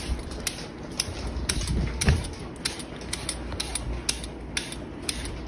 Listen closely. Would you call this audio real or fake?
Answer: real